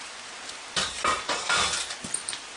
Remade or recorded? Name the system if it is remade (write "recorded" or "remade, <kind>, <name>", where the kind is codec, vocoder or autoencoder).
remade, vocoder, BigVGAN v2